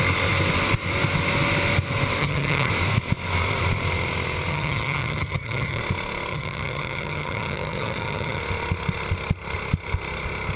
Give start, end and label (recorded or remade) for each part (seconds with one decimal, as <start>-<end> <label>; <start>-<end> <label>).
0.0-2.2 recorded; 2.2-2.7 remade; 2.7-4.5 recorded; 4.5-5.8 remade; 5.8-6.3 recorded; 6.3-8.4 remade; 8.4-10.6 recorded